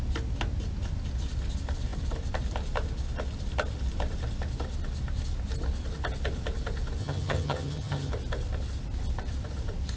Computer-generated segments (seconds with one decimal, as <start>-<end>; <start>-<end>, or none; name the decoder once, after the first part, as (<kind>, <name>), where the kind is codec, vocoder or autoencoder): 7.0-8.1 (vocoder, HiFi-GAN)